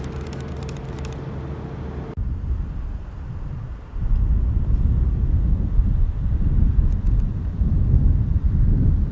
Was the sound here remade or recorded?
recorded